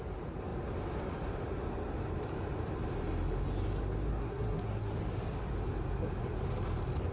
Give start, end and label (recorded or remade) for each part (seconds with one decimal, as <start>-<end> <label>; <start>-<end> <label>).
0.0-4.1 recorded; 4.1-4.9 remade; 4.9-7.1 recorded